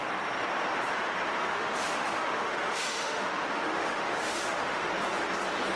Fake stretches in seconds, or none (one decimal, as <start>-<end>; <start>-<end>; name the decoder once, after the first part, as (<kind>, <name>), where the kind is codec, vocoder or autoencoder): 1.4-4.9 (autoencoder, DAC-VAE)